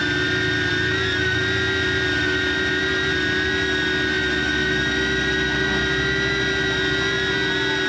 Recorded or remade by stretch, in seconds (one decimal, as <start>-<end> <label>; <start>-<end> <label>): 0.0-7.9 recorded